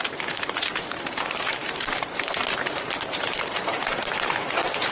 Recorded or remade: remade